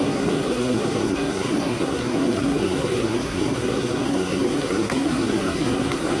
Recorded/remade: remade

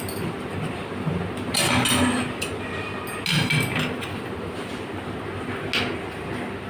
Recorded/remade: recorded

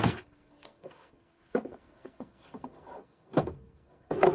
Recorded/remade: remade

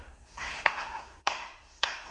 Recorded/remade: remade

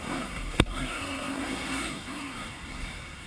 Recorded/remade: remade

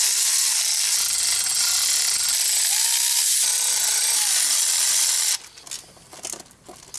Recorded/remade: recorded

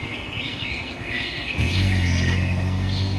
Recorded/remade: remade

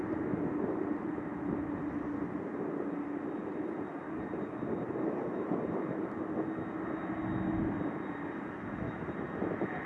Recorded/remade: recorded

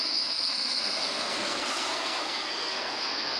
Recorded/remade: remade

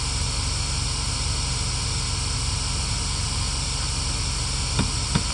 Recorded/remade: recorded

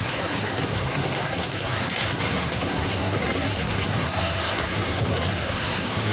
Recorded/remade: remade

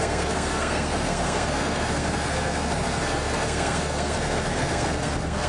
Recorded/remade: remade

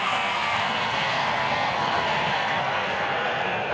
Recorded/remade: remade